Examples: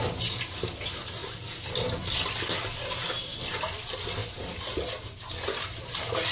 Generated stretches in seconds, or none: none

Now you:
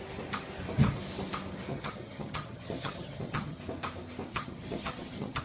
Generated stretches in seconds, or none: 1.7-3.6 (vocoder, HiFi-GAN); 4.3-5.4

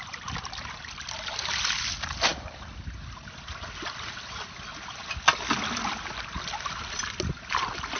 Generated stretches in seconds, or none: none

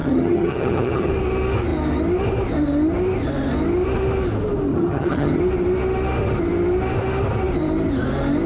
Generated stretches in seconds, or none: 0.0-1.1 (vocoder, HiFi-GAN); 4.7-5.4